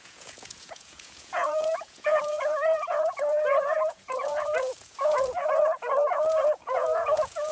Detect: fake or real fake